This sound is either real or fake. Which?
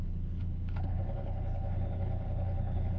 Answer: fake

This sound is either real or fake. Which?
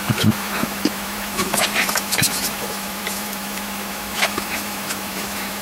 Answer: fake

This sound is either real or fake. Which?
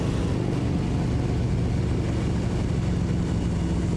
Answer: real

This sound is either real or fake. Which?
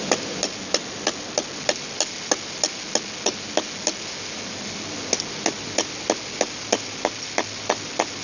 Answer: real